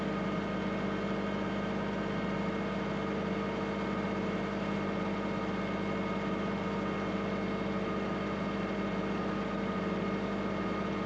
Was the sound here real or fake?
real